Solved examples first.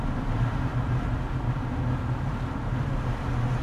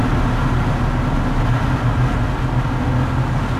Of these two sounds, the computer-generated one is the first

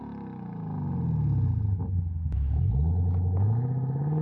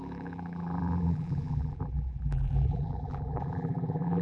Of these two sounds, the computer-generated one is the second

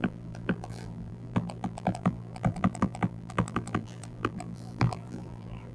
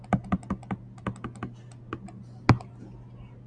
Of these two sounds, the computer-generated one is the first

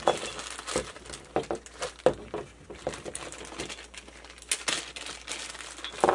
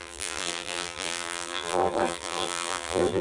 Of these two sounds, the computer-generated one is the second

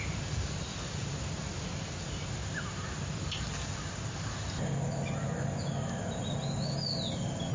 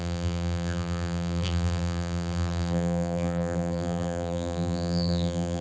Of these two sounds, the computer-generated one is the second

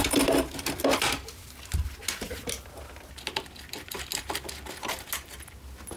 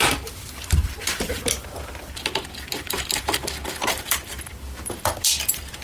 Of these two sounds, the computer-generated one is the second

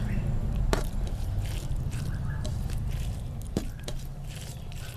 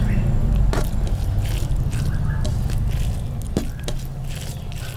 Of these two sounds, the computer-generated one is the first